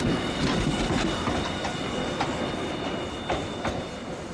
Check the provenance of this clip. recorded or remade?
recorded